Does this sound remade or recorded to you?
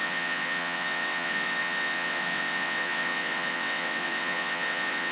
remade